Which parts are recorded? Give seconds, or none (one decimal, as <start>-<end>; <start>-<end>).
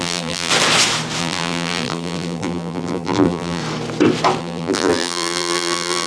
0.5-1.2; 3.6-4.4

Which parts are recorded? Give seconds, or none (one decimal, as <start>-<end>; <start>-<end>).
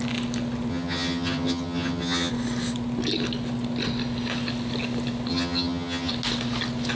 0.0-0.7; 2.3-5.3; 6.1-7.0